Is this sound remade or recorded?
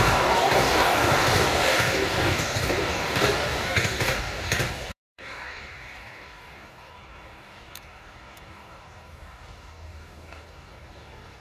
remade